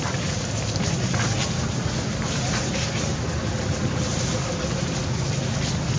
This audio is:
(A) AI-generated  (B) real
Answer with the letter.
B